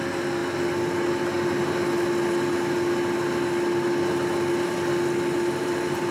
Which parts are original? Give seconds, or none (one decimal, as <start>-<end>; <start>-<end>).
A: 0.0-6.1